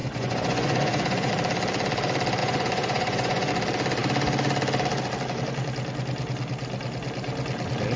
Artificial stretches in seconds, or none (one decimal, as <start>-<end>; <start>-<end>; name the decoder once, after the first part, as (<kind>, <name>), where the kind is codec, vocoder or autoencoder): 0.0-1.3 (vocoder, Vocos); 2.4-3.5

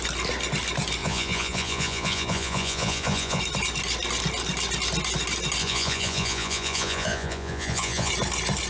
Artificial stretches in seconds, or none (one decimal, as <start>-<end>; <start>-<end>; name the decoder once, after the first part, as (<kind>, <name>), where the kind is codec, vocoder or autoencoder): 1.0-3.4 (vocoder, Vocos); 5.6-8.1

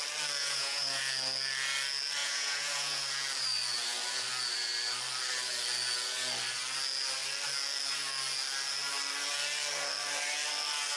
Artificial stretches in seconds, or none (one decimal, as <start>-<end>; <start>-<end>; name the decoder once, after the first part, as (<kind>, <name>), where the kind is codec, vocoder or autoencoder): 0.4-1.0 (vocoder, Vocos); 2.2-3.0